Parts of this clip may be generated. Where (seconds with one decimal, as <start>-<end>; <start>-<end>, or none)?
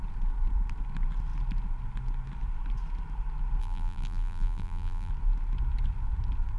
3.6-5.1